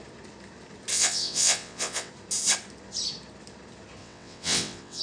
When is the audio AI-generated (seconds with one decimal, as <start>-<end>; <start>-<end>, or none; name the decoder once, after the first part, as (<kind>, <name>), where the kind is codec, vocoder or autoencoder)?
0.9-2.1 (vocoder, WaveNeXt); 4.0-5.0